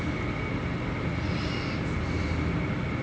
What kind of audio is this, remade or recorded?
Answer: recorded